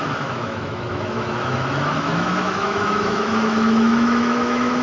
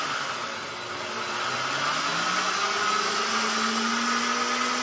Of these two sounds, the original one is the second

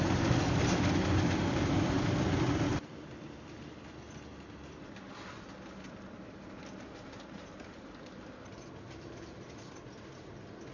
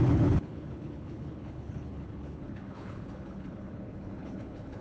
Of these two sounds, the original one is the first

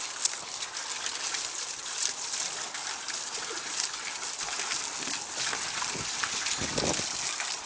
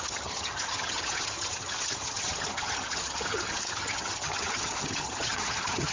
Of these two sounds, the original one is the first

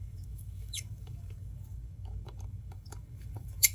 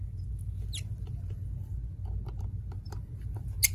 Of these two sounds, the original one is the second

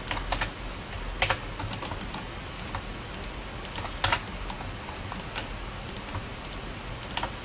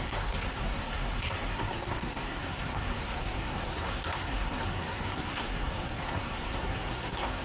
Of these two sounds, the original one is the first